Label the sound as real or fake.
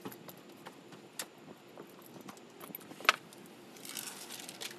real